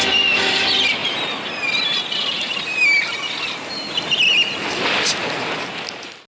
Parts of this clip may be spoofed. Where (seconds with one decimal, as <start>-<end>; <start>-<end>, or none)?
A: none